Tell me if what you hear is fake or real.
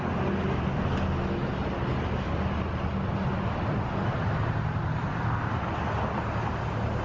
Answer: real